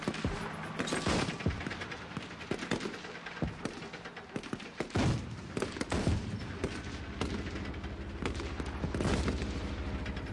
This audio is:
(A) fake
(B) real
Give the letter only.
B